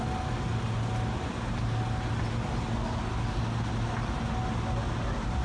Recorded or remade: recorded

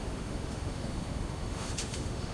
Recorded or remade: remade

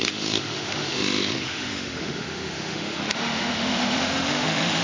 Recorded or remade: remade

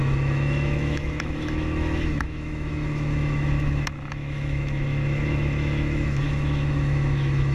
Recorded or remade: remade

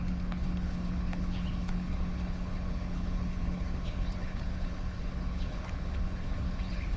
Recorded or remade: remade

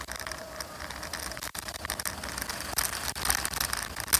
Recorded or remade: recorded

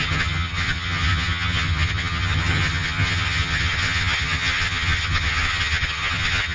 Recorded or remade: remade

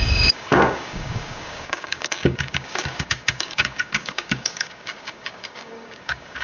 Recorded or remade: remade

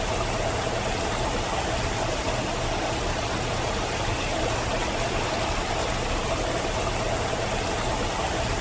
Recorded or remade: recorded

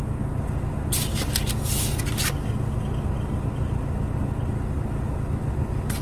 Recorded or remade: recorded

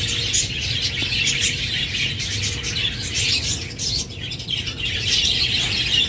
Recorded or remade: recorded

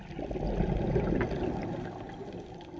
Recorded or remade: recorded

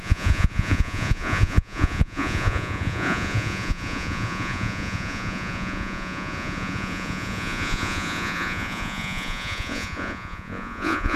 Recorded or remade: remade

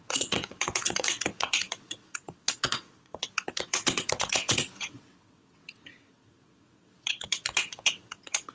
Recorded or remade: remade